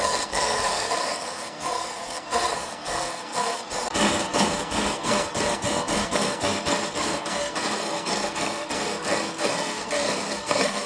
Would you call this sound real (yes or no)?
no